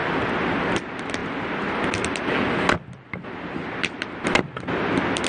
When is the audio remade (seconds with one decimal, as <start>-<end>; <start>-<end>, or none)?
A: none